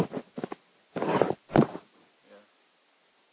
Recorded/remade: recorded